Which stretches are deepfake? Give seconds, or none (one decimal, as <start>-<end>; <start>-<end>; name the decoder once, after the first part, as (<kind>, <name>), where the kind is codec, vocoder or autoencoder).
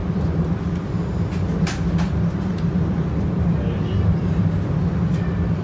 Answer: 0.0-5.6 (vocoder, BigVGAN v2)